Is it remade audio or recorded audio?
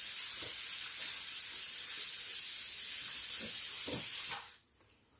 recorded